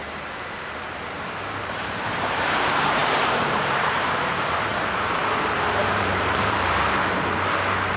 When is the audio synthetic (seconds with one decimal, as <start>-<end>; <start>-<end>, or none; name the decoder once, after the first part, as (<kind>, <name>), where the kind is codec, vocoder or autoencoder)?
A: 0.0-5.2 (vocoder, BigVGAN v2); 5.8-8.0